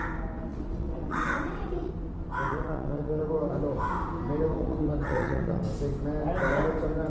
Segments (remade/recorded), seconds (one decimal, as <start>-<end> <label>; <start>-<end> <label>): 0.0-0.5 recorded; 0.5-1.9 remade; 1.9-2.5 recorded; 2.5-3.2 remade; 3.2-4.5 recorded; 4.5-5.6 remade; 5.6-7.1 recorded